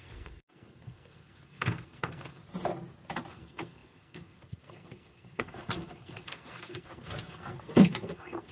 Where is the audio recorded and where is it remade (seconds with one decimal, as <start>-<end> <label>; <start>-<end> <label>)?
0.0-2.4 remade; 2.4-3.3 recorded; 3.3-8.5 remade